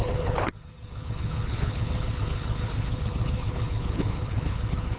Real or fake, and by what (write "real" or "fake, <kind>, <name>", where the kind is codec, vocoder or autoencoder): fake, codec, HILCodec